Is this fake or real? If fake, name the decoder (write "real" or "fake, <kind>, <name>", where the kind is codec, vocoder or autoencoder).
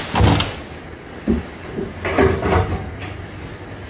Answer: real